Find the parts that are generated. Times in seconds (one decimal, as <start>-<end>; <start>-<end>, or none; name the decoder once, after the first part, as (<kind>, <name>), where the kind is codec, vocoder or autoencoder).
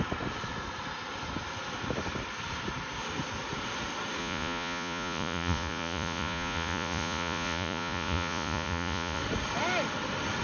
4.2-9.2 (vocoder, Vocos)